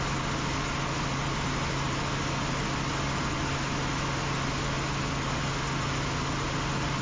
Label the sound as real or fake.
real